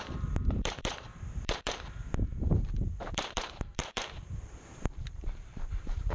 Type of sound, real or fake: fake